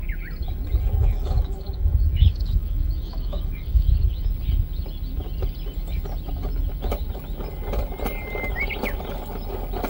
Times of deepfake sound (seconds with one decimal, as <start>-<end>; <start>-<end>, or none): 1.0-4.3